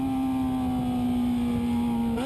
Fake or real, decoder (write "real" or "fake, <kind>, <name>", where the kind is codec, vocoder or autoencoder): real